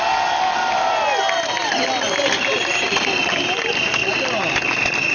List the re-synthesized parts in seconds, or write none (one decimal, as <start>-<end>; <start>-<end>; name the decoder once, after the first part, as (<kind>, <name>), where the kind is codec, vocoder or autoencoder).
none